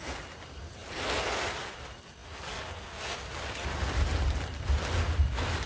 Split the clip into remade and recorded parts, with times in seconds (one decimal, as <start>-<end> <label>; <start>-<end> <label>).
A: 0.0-5.7 recorded